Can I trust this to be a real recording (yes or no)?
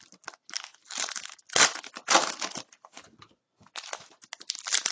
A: yes